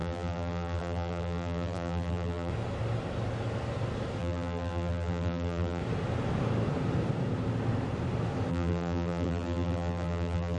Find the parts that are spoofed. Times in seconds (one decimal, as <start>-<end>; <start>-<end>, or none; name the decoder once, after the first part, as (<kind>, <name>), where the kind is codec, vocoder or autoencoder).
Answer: 0.0-2.5 (vocoder, BigVGAN v2); 4.2-5.8; 8.5-10.6